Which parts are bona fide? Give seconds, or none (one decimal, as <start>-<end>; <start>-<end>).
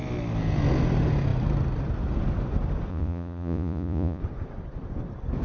0.0-2.9; 4.2-5.4